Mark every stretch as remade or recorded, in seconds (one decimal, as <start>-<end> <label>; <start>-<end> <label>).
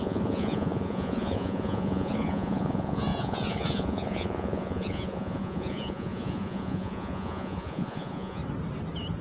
0.0-8.4 remade; 8.4-9.2 recorded